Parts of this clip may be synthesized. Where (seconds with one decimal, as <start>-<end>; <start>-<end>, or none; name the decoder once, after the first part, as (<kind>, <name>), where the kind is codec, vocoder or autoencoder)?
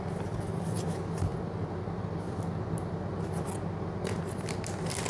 none